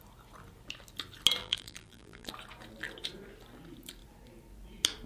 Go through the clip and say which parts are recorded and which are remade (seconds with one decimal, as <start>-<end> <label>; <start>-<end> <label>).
0.0-1.4 recorded; 1.4-2.3 remade; 2.3-5.1 recorded